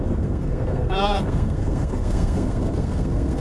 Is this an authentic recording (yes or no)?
no